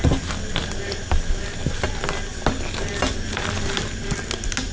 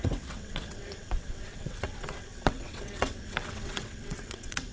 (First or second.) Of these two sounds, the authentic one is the first